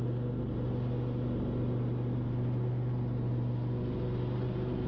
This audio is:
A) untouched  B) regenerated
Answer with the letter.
A